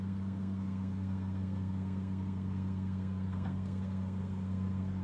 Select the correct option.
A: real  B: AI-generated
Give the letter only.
B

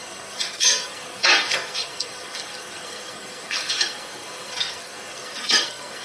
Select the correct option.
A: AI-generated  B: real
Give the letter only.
A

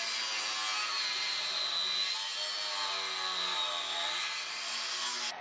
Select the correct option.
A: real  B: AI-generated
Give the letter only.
A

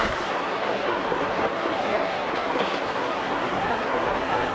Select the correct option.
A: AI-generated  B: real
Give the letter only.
A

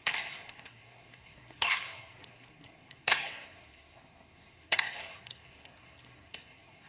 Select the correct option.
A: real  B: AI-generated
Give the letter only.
B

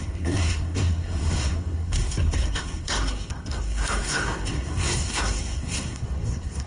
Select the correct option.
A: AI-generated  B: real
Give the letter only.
A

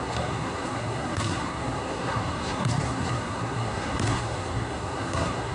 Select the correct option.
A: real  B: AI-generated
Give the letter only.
B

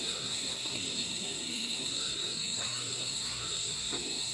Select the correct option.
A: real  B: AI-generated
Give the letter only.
B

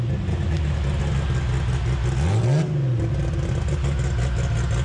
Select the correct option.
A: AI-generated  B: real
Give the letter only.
B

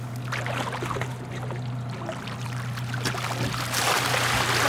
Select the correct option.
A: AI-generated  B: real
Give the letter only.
B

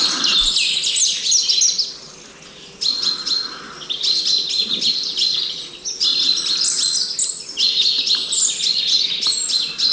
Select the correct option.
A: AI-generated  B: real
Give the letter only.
B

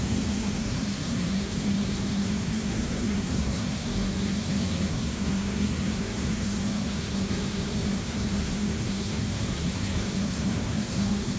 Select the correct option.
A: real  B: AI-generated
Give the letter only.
B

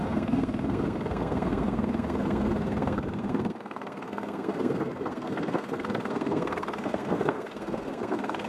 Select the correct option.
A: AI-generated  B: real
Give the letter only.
A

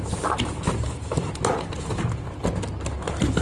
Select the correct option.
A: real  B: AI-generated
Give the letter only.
A